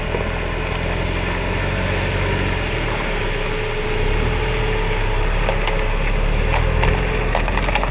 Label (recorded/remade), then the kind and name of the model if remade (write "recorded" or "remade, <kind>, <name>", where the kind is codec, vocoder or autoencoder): recorded